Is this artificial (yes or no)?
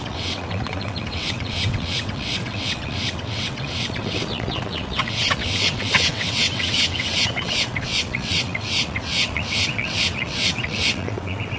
yes